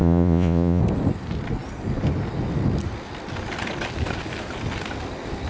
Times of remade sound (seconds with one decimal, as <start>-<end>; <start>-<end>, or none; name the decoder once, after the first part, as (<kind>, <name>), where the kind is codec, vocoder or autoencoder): 0.0-0.8 (vocoder, Vocos)